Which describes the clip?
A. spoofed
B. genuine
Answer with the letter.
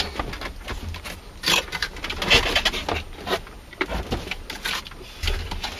B